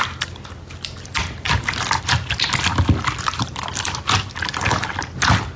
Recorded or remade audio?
recorded